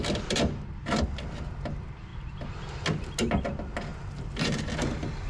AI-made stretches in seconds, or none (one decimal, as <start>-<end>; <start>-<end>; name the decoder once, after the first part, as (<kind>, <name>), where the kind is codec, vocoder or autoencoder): 3.9-4.6 (vocoder, BigVGAN v2)